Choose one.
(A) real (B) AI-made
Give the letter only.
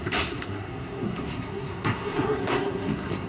B